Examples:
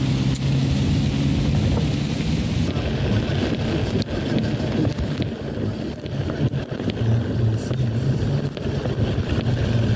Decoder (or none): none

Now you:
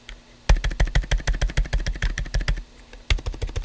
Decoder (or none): none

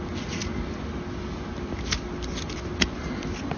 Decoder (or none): none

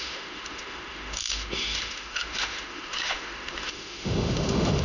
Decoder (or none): autoencoder, DAC-VAE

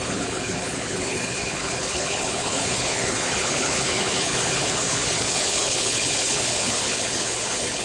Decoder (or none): codec, HILCodec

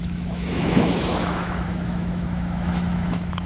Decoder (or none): autoencoder, DAC-VAE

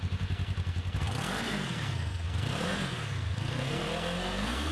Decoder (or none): codec, SNAC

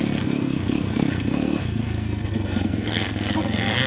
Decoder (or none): codec, SNAC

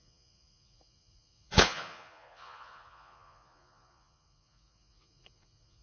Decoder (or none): vocoder, Vocos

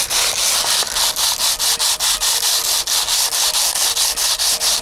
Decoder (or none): none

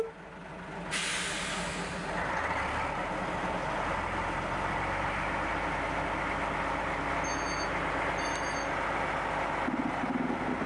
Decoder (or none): none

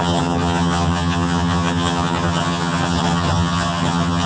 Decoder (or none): vocoder, HiFi-GAN